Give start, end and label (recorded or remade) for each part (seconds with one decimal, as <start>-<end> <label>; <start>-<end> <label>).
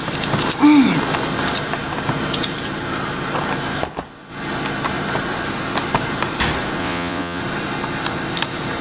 0.0-6.8 recorded; 6.8-7.4 remade; 7.4-8.8 recorded